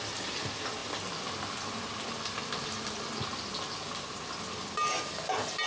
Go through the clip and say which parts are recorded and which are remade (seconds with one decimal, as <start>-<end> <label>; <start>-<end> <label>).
0.0-5.7 recorded